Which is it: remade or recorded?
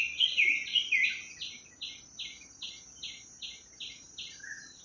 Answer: recorded